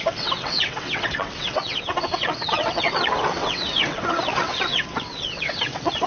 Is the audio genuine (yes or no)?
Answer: no